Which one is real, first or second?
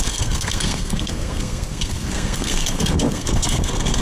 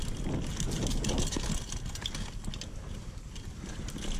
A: second